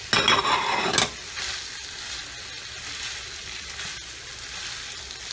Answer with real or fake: real